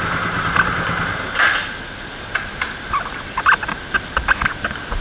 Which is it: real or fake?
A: real